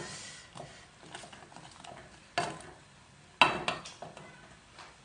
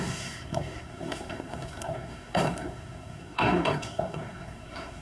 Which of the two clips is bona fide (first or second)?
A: first